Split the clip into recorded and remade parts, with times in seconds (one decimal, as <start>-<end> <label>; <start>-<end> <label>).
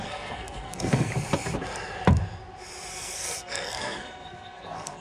0.0-1.1 remade; 1.1-2.9 recorded; 2.9-5.0 remade